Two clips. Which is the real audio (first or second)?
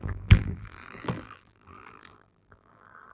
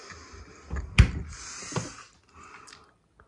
second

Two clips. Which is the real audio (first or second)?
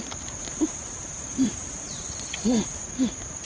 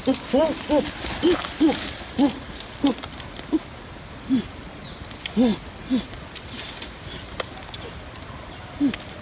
second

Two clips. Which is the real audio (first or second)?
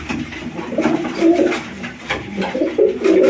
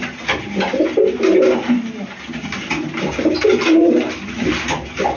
second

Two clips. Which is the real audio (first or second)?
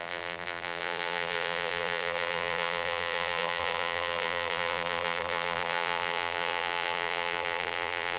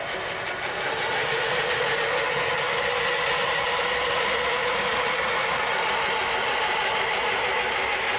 second